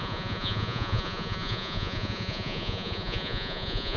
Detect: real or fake fake